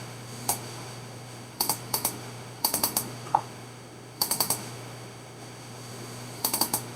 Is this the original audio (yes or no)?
no